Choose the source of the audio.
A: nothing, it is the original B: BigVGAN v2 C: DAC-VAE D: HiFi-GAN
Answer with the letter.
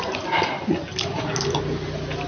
A